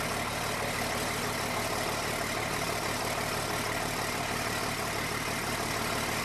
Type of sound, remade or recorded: recorded